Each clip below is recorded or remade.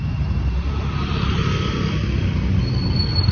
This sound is recorded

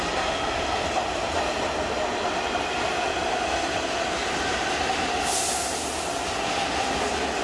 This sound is recorded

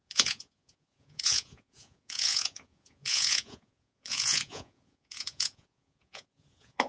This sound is remade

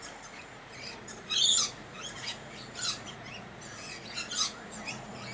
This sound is remade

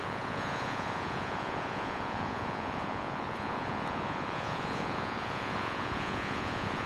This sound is remade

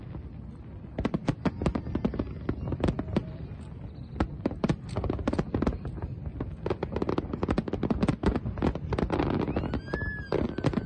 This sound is recorded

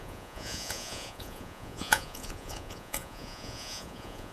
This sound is remade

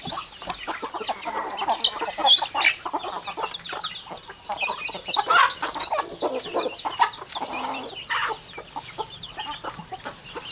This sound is recorded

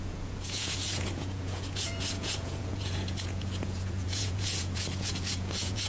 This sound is remade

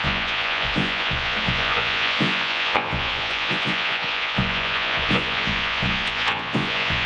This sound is remade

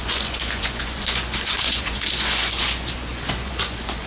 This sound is remade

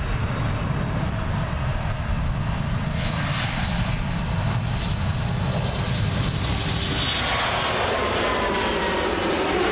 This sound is recorded